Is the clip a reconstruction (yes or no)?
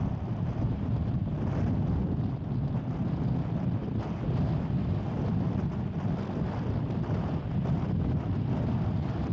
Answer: no